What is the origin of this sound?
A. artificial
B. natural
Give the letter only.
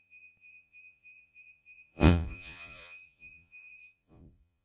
A